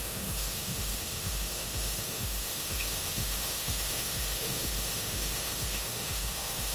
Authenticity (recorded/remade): remade